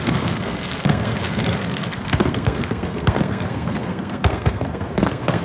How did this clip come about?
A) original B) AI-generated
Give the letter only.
B